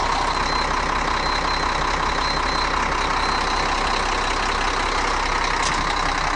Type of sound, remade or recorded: recorded